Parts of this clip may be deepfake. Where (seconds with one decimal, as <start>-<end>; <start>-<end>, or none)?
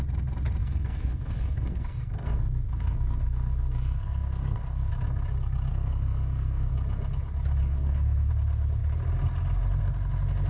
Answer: 0.6-4.9; 5.7-6.7; 7.6-8.3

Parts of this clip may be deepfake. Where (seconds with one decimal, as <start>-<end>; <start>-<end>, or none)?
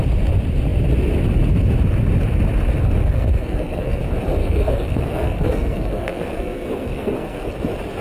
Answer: 3.0-4.0; 4.4-7.5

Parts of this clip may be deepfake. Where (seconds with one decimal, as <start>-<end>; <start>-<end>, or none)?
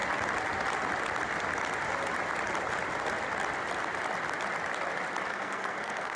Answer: 5.3-6.2